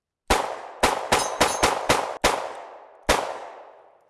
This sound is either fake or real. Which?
real